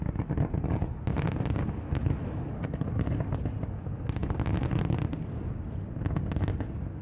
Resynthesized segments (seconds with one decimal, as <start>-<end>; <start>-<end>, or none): none